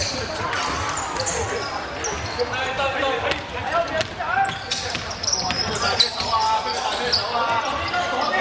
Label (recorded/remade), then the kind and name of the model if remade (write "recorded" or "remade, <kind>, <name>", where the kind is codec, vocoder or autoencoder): recorded